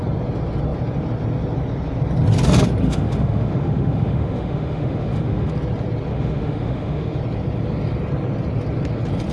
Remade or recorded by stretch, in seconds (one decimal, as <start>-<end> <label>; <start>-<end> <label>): 0.0-2.8 recorded; 2.8-5.5 remade; 5.5-6.1 recorded; 6.1-7.2 remade; 7.2-9.3 recorded